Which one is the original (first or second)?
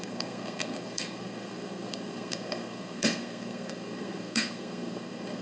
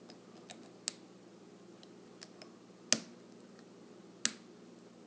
second